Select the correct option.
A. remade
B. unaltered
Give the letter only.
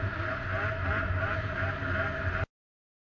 B